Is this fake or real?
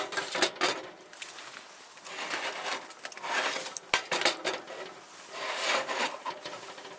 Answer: real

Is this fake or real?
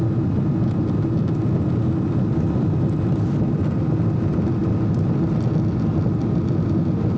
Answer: real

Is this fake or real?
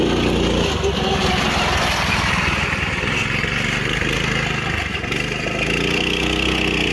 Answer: real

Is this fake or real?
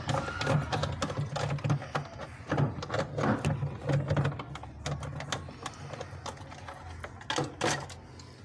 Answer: real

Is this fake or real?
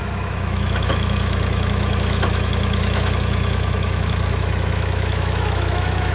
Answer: fake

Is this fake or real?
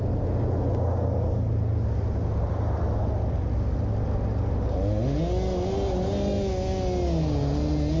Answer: real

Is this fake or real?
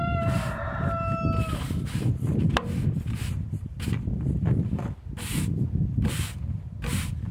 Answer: real